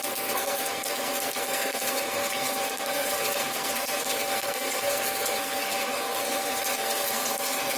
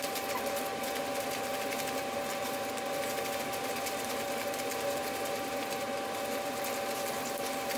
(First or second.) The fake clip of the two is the first